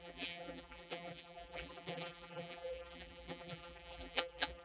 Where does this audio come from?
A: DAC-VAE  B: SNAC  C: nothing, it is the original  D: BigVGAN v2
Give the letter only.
D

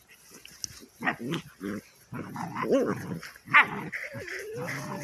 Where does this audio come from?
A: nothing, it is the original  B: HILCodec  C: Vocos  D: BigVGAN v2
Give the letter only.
A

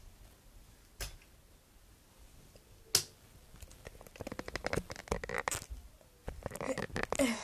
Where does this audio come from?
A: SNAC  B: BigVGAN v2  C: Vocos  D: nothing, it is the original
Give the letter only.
D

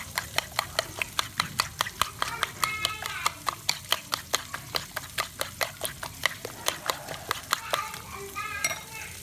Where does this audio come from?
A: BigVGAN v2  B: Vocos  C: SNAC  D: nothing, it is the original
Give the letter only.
D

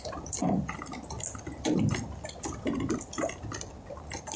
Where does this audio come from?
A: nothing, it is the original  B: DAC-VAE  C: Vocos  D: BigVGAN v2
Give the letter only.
A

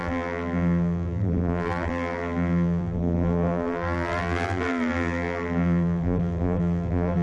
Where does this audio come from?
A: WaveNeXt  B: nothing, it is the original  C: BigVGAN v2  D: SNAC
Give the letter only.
C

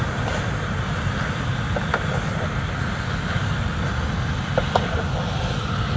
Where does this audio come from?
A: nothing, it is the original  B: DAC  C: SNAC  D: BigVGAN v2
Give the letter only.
A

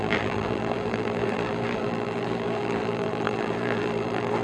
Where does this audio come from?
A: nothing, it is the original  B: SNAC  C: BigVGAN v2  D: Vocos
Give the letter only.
C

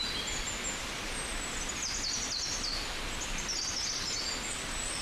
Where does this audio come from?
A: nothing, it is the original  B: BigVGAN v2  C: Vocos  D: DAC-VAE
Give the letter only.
A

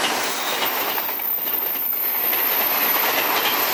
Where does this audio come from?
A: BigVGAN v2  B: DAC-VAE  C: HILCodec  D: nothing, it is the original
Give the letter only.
D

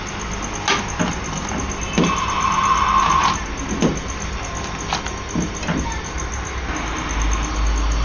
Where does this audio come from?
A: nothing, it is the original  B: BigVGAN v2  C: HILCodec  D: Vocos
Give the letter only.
A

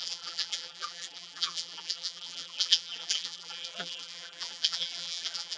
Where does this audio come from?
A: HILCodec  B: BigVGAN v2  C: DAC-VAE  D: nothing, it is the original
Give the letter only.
B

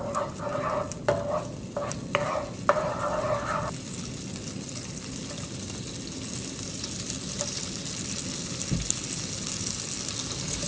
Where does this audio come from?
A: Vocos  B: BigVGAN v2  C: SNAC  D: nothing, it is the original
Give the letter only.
D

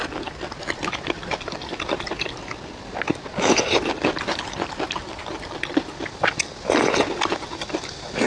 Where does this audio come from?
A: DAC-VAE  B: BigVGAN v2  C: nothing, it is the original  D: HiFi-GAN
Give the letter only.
C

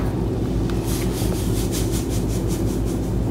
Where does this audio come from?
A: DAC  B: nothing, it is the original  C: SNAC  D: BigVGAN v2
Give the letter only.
B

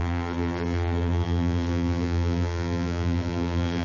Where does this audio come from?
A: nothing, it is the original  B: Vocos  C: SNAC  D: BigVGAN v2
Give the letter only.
D